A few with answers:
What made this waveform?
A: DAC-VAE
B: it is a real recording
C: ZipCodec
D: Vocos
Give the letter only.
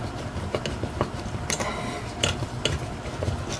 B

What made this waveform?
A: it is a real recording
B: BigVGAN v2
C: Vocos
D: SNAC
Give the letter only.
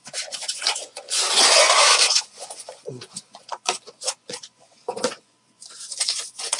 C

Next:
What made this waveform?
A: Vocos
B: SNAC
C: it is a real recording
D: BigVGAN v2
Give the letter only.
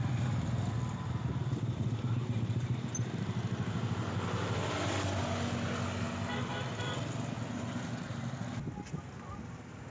C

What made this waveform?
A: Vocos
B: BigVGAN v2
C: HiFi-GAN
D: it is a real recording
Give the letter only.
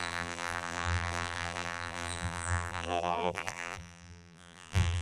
B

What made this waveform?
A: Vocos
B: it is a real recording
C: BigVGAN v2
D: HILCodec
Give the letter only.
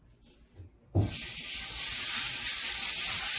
B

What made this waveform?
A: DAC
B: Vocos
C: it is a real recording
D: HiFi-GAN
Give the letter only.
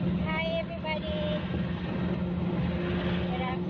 C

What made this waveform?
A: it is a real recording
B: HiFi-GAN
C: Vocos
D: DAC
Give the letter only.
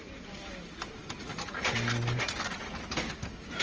A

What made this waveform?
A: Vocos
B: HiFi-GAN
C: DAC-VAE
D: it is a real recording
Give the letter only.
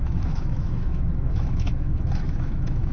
C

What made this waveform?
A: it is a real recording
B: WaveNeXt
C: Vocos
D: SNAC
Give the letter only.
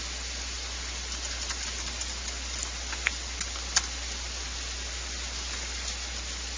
A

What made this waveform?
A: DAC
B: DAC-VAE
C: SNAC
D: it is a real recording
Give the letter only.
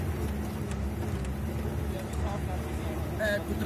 D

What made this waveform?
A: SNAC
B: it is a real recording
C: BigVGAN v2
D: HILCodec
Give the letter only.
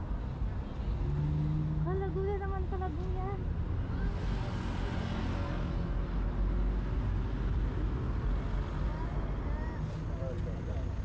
B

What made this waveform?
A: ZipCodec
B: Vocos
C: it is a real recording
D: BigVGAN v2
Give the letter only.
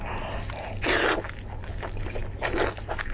C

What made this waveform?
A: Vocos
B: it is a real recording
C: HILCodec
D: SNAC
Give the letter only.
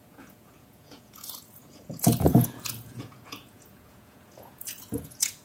A